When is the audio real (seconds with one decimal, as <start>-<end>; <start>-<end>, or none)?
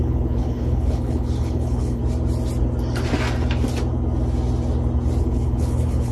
2.0-5.2